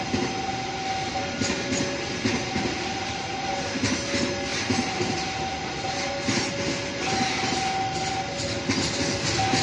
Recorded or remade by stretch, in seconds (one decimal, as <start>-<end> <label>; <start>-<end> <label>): 0.0-9.6 recorded